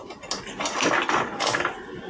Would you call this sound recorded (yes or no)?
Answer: yes